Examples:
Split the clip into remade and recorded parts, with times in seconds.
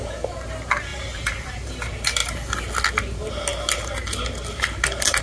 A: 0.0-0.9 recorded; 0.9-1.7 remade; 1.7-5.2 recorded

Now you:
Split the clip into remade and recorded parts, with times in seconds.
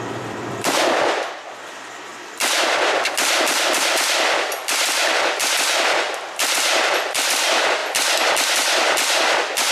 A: 0.0-7.8 remade; 7.8-9.7 recorded